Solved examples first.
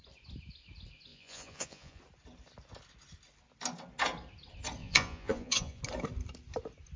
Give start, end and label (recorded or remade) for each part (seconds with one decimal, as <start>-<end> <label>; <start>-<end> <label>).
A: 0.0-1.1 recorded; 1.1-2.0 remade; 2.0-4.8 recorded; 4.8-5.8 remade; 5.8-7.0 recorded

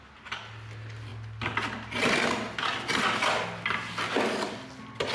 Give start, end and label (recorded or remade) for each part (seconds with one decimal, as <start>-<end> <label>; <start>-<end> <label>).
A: 0.0-5.1 recorded

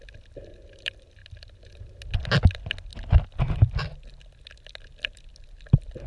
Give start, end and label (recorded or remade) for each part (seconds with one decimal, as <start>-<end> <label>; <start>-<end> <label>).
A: 0.0-6.1 recorded

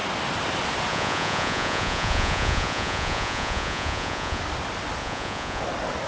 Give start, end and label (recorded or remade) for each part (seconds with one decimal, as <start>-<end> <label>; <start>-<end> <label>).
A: 0.0-0.9 recorded; 0.9-4.4 remade; 4.4-5.0 recorded; 5.0-5.6 remade; 5.6-6.1 recorded

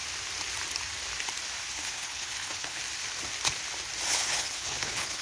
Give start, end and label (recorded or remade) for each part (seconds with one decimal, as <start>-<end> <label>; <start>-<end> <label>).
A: 0.0-1.7 recorded; 1.7-2.8 remade; 2.8-4.1 recorded; 4.1-5.2 remade